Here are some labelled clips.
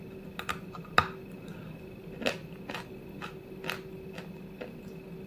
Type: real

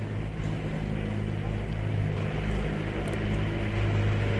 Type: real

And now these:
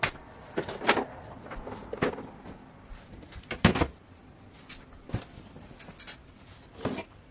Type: real